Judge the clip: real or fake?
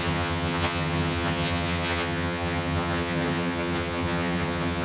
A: fake